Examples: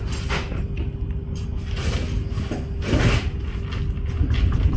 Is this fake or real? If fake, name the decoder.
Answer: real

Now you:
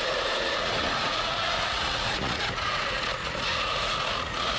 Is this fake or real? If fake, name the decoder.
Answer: fake, vocoder, Vocos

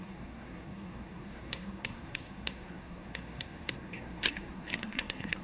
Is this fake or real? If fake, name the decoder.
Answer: fake, codec, SNAC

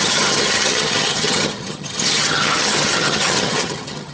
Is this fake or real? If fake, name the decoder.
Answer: fake, vocoder, HiFi-GAN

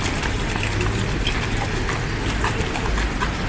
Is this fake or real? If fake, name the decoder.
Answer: real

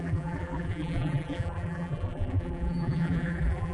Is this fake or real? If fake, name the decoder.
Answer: fake, vocoder, BigVGAN v2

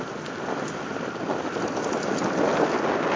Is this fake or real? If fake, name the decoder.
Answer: real